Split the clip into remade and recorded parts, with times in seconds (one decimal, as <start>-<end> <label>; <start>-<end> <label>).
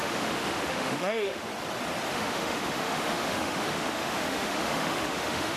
0.0-1.5 remade; 1.5-2.1 recorded; 2.1-5.6 remade